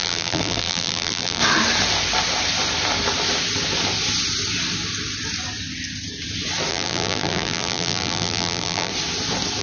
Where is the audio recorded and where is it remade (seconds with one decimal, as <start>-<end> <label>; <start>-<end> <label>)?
0.0-1.4 remade; 1.4-6.7 recorded; 6.7-8.9 remade; 8.9-9.6 recorded